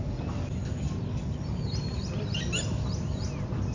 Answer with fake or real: real